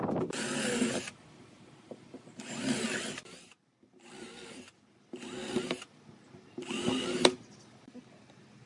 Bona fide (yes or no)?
yes